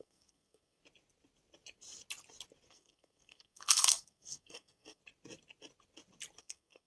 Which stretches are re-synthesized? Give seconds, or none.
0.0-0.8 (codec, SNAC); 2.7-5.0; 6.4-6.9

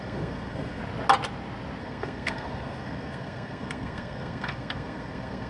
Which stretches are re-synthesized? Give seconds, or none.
0.0-0.8 (codec, SNAC); 1.8-5.5

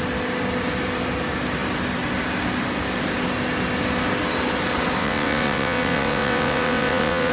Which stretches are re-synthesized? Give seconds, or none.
5.0-7.3 (vocoder, WaveNeXt)

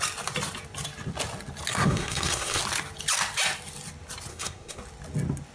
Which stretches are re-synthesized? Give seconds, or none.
1.7-2.6 (codec, SNAC); 4.3-4.8

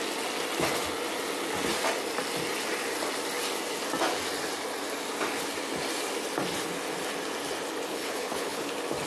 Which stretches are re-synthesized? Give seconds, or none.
7.9-8.7 (codec, HILCodec)

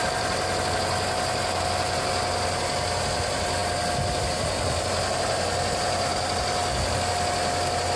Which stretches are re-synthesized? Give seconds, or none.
none

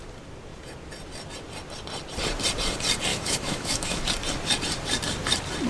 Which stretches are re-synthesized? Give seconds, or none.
3.1-4.0 (autoencoder, DAC-VAE)